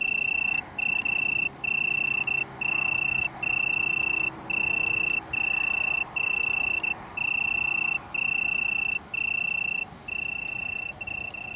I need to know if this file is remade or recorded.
recorded